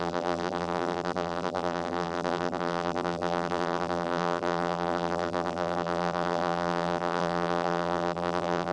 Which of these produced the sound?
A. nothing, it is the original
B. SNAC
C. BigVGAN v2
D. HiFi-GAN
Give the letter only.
C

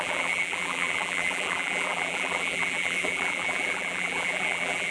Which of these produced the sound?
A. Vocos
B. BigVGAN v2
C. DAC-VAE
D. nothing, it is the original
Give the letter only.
B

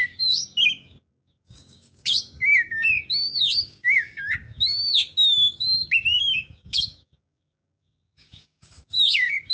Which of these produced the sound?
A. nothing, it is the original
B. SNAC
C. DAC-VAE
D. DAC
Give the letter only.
D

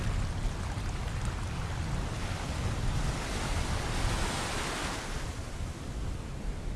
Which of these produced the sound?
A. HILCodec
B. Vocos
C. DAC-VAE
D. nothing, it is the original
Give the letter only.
D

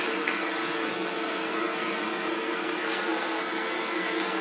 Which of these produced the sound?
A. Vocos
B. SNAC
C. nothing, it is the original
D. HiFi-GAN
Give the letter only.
B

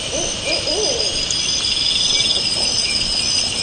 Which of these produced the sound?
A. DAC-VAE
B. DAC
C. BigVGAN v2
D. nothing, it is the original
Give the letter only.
D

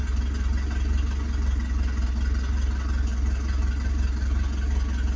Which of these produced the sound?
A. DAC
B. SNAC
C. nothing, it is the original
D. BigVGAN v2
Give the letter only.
C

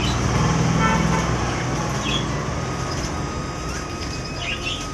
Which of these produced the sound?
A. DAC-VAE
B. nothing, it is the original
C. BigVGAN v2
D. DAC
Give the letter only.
B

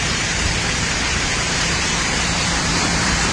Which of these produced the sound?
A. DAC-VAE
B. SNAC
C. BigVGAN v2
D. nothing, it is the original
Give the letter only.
C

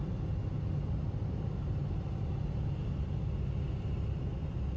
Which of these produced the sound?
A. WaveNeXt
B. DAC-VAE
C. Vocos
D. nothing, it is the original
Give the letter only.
D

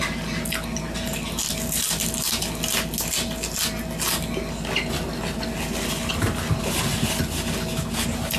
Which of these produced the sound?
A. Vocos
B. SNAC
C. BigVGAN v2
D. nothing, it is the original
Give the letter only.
D